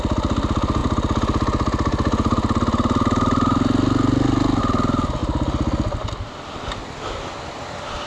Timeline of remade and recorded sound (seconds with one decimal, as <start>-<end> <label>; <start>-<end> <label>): 0.0-8.1 recorded